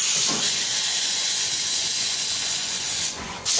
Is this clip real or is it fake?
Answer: fake